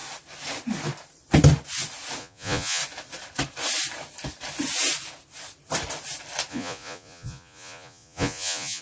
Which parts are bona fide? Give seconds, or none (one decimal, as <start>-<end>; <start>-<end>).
0.0-2.2; 2.8-6.5